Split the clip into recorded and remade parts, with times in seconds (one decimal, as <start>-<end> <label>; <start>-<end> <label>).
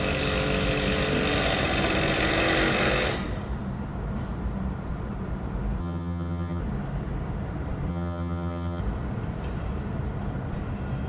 0.0-5.8 recorded; 5.8-6.6 remade; 6.6-7.9 recorded; 7.9-8.8 remade; 8.8-11.1 recorded